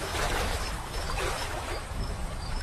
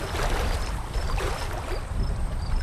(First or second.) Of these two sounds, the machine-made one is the first